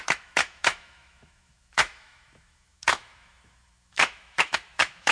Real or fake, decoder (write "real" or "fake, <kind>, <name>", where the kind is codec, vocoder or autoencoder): fake, autoencoder, DAC-VAE